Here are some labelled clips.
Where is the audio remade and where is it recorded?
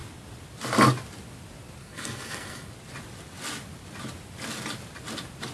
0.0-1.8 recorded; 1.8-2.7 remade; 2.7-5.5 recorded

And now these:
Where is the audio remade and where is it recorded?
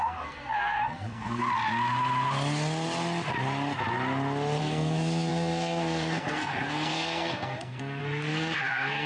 0.0-1.4 remade; 1.4-4.6 recorded; 4.6-9.1 remade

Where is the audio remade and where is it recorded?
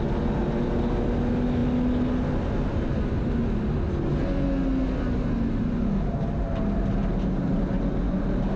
0.0-8.6 recorded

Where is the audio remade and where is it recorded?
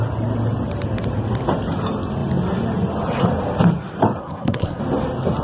0.0-4.2 recorded; 4.2-4.8 remade; 4.8-5.4 recorded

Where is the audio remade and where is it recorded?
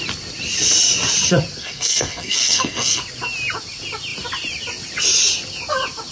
0.0-1.6 recorded; 1.6-3.0 remade; 3.0-6.1 recorded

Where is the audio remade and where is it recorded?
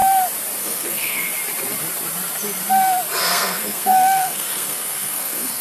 0.0-0.6 recorded; 0.6-1.3 remade; 1.3-3.2 recorded; 3.2-5.6 remade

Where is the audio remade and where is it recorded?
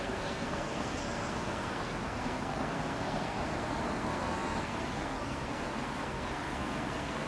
0.0-7.3 remade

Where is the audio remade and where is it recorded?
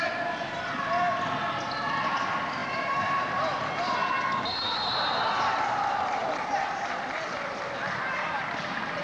0.0-9.0 recorded